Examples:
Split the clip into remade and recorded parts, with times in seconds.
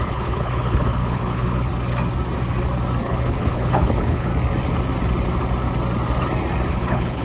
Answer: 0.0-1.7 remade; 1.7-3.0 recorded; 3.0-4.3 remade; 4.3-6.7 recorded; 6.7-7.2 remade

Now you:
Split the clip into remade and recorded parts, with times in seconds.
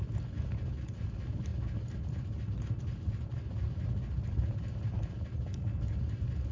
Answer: 0.0-6.5 recorded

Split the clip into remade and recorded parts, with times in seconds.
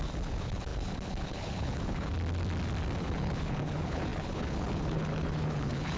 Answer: 0.0-2.1 remade; 2.1-3.0 recorded; 3.0-6.0 remade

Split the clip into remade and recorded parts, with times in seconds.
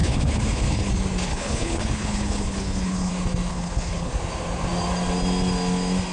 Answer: 0.0-0.9 remade; 0.9-1.3 recorded; 1.3-3.1 remade; 3.1-3.5 recorded; 3.5-4.1 remade; 4.1-6.1 recorded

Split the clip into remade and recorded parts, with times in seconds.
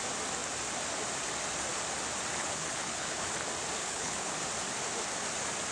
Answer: 0.0-2.4 recorded; 2.4-3.3 remade; 3.3-3.8 recorded; 3.8-4.3 remade; 4.3-5.7 recorded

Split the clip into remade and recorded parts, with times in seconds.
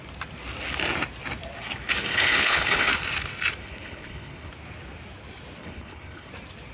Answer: 0.0-2.1 recorded; 2.1-2.9 remade; 2.9-3.6 recorded; 3.6-4.5 remade; 4.5-5.6 recorded; 5.6-6.3 remade; 6.3-6.7 recorded